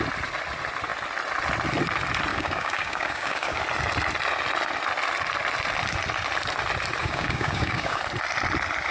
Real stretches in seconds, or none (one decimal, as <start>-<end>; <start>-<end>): 0.0-2.3; 3.6-7.0; 8.0-8.9